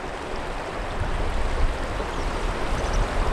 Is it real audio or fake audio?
real